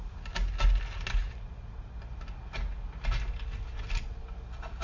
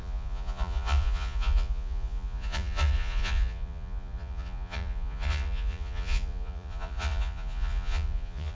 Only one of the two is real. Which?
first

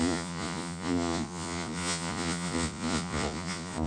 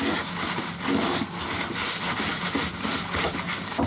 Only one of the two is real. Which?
second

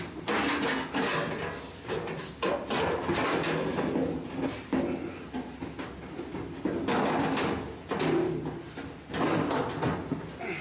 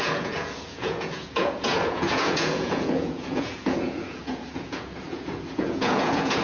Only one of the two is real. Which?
first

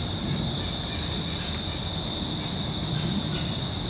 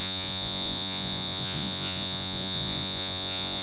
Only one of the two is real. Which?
first